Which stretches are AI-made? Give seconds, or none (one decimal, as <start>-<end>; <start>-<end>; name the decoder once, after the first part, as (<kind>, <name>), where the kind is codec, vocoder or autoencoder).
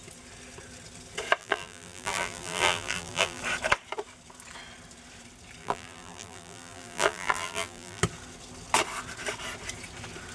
1.4-3.4 (vocoder, BigVGAN v2); 5.6-8.0